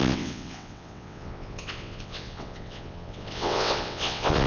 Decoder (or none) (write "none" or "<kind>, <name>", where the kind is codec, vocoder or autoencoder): vocoder, WaveNeXt